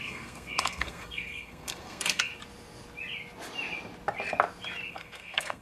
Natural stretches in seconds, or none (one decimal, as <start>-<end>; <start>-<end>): 2.3-4.9